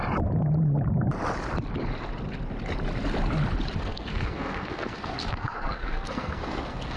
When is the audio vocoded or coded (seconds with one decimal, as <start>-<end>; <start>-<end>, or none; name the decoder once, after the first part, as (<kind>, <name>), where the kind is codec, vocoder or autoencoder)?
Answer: 3.8-7.0 (codec, SNAC)